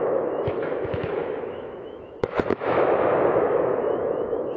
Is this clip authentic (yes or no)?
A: no